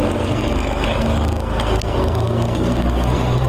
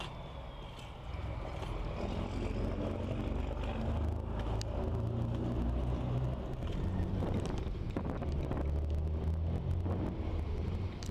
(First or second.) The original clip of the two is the second